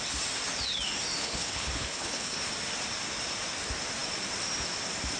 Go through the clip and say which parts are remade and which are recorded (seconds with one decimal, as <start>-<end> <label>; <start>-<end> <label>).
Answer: 0.0-1.2 recorded; 1.2-2.4 remade; 2.4-5.2 recorded